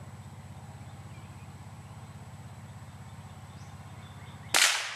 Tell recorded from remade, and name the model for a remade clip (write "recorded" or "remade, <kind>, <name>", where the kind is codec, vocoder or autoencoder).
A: recorded